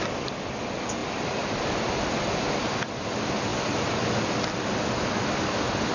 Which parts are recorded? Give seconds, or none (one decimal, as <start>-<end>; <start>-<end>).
0.0-5.9